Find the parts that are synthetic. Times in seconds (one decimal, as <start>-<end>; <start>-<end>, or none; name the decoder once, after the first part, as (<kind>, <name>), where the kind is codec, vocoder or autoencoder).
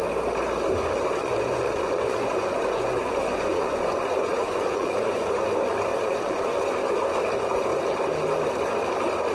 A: 1.2-5.3 (vocoder, Vocos); 5.9-6.6